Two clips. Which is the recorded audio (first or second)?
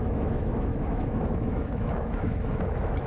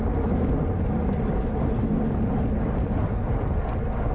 second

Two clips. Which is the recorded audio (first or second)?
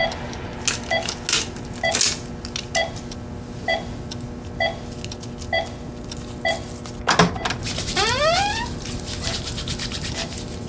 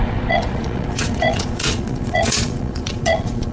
first